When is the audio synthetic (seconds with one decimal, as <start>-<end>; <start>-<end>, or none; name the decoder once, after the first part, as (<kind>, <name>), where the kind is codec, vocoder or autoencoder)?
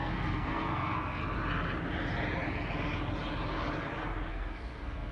0.0-1.2 (codec, SNAC); 4.3-5.1